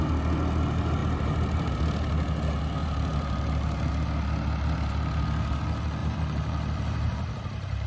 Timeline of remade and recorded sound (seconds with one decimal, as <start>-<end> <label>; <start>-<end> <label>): 0.0-1.0 recorded; 1.0-1.7 remade; 1.7-2.8 recorded; 2.8-3.9 remade; 3.9-6.0 recorded; 6.0-7.9 remade

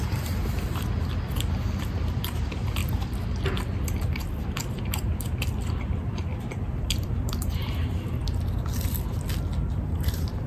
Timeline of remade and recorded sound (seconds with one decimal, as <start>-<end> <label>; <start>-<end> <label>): 0.0-0.4 remade; 0.4-1.8 recorded; 1.8-2.8 remade; 2.8-6.4 recorded; 6.4-8.2 remade; 8.2-9.7 recorded; 9.7-10.5 remade

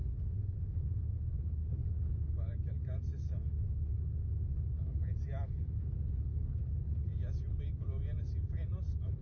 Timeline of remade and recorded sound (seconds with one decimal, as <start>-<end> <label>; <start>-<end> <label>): 0.0-9.2 recorded

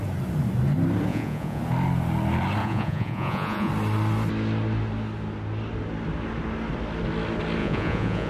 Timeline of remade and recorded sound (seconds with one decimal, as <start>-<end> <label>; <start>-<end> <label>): 0.0-1.1 recorded; 1.1-1.6 remade; 1.6-2.6 recorded; 2.6-3.7 remade; 3.7-7.6 recorded; 7.6-8.3 remade